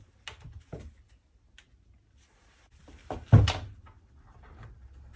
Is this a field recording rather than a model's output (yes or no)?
yes